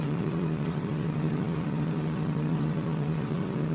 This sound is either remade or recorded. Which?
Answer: remade